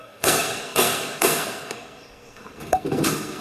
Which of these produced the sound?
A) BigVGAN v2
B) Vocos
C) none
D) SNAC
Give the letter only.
D